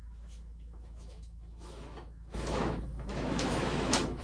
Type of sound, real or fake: fake